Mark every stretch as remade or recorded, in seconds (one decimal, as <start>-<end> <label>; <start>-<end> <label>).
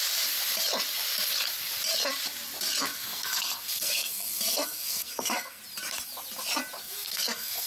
0.0-2.9 recorded; 2.9-5.6 remade; 5.6-6.8 recorded; 6.8-7.7 remade